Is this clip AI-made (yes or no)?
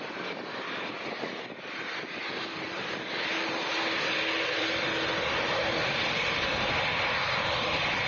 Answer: yes